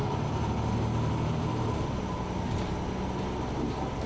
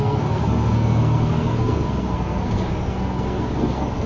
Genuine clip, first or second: first